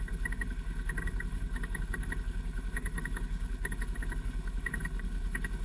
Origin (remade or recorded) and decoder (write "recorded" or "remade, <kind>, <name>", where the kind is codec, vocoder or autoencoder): remade, codec, HILCodec